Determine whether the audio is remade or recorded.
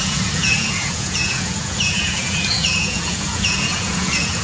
remade